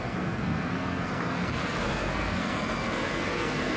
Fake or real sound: fake